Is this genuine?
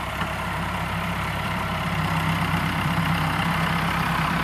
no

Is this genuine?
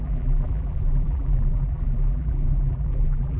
no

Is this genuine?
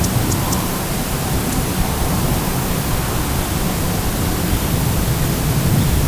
yes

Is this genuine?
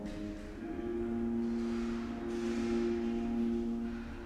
yes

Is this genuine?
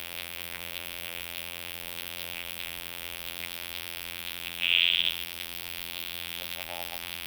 no